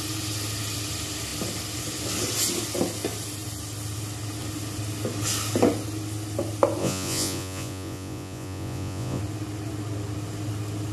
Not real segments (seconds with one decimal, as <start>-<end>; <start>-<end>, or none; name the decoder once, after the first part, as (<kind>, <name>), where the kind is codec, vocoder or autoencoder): 6.8-9.2 (vocoder, Vocos)